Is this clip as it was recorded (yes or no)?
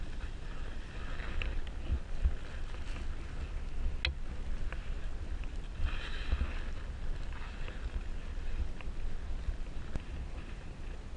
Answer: yes